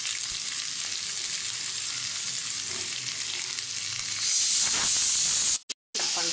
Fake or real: real